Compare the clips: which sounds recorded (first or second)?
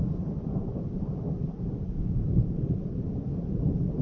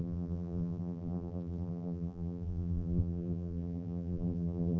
first